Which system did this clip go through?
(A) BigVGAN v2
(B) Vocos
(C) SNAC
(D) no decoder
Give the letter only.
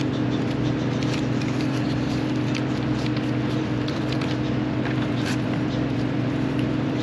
A